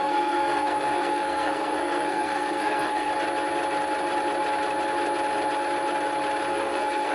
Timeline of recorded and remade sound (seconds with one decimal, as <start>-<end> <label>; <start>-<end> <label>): 0.0-3.1 remade; 3.1-6.5 recorded; 6.5-7.1 remade